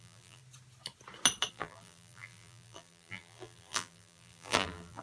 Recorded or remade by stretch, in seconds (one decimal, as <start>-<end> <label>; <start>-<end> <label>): 0.0-0.4 remade; 0.4-1.5 recorded; 1.5-5.0 remade

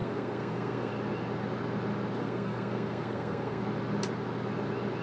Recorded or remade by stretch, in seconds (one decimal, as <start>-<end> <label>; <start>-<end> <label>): 0.0-0.9 remade; 0.9-2.2 recorded; 2.2-3.6 remade; 3.6-5.0 recorded

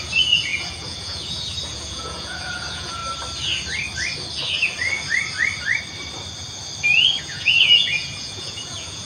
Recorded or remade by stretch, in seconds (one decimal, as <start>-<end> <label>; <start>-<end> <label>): 0.0-3.0 remade; 3.0-7.2 recorded; 7.2-9.1 remade

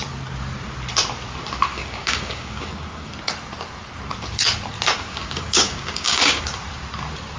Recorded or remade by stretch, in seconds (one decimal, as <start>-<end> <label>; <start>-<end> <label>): 0.0-1.7 recorded; 1.7-3.1 remade; 3.1-5.1 recorded; 5.1-6.4 remade; 6.4-7.4 recorded

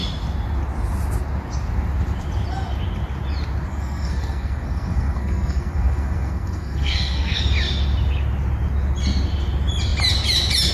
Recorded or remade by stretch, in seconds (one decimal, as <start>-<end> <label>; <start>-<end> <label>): 0.0-3.7 recorded; 3.7-7.4 remade; 7.4-10.7 recorded

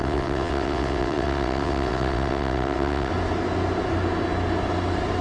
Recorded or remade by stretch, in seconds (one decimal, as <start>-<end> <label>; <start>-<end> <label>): 0.0-3.1 remade; 3.1-5.2 recorded

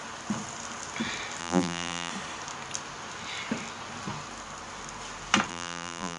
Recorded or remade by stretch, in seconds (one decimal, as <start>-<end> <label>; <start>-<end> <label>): 0.0-1.4 recorded; 1.4-2.1 remade; 2.1-5.5 recorded; 5.5-6.2 remade

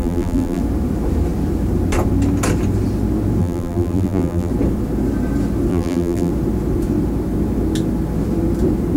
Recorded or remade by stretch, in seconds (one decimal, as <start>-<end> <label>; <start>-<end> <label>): 0.0-0.6 remade; 0.6-3.4 recorded; 3.4-4.5 remade; 4.5-5.7 recorded; 5.7-6.3 remade; 6.3-9.0 recorded